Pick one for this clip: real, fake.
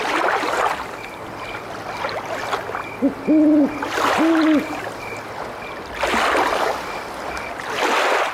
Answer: real